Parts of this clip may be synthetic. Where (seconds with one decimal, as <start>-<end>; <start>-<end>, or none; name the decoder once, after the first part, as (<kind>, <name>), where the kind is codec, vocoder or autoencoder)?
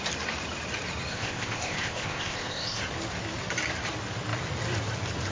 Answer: 1.1-2.8 (codec, ZipCodec)